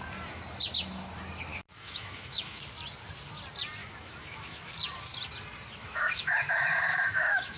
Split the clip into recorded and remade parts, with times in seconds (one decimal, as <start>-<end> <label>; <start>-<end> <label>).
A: 0.0-1.5 recorded; 1.5-2.6 remade; 2.6-3.8 recorded; 3.8-4.7 remade; 4.7-5.8 recorded; 5.8-7.6 remade